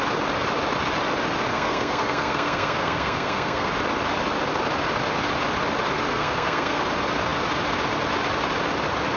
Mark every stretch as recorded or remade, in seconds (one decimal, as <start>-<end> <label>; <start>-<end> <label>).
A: 0.0-1.5 recorded; 1.5-3.7 remade; 3.7-6.1 recorded; 6.1-6.8 remade; 6.8-9.2 recorded